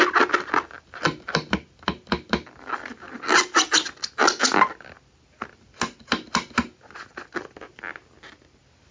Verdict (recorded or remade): recorded